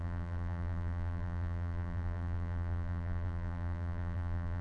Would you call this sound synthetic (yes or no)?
yes